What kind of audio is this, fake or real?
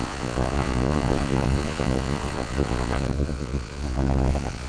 fake